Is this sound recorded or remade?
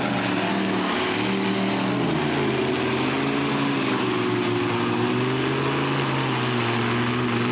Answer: recorded